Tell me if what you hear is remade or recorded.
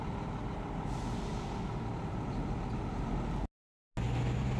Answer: recorded